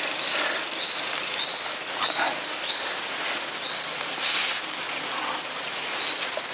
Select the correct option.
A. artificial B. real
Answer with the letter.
B